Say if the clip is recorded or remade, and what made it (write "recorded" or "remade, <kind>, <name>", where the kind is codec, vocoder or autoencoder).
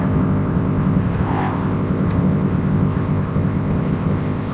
remade, codec, ZipCodec